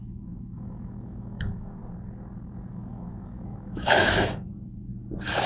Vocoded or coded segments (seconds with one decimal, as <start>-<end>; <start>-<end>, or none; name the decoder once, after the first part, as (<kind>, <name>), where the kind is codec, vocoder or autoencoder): 0.0-1.8 (autoencoder, DAC-VAE); 2.7-4.9